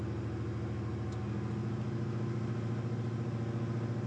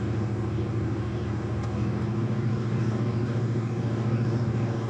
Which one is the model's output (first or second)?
second